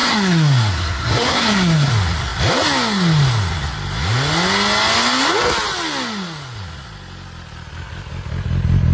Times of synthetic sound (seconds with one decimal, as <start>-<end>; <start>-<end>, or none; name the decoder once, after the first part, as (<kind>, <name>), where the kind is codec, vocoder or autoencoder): 0.0-1.9 (codec, SNAC)

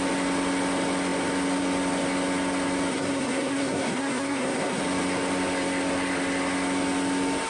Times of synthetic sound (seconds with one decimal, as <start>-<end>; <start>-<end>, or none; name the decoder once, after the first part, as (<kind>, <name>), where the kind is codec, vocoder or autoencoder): 2.9-4.8 (codec, SNAC)

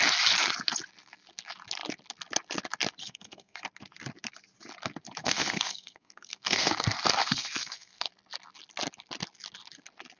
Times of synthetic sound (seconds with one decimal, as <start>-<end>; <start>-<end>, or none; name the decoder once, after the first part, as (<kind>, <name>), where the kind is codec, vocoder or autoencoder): 3.0-3.6 (codec, SNAC); 5.2-6.7; 7.2-8.1

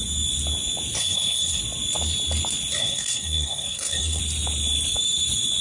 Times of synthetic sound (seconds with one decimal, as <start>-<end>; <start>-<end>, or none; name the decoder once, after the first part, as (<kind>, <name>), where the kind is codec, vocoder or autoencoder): 1.0-1.6 (codec, SNAC); 2.8-4.2